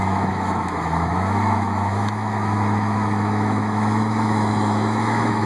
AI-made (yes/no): yes